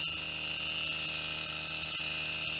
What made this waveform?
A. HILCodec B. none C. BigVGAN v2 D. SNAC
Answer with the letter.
B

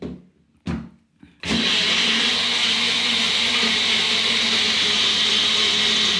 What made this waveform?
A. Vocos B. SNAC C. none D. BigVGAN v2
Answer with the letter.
C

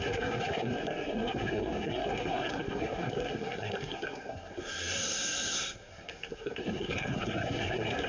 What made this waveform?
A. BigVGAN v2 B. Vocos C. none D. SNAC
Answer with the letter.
D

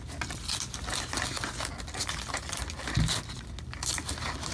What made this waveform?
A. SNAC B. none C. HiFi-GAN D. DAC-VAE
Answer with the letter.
B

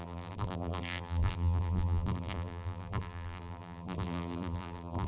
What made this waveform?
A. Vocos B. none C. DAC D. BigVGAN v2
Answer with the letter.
D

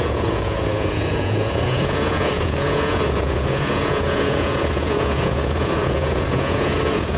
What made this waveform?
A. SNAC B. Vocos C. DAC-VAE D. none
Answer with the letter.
B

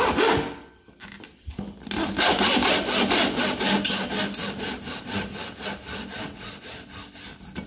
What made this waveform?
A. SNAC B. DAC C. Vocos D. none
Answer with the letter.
D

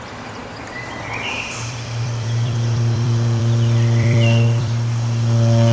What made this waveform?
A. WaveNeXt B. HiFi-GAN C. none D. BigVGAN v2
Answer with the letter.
D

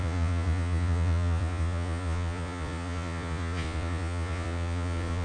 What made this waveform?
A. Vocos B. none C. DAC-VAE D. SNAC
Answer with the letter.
A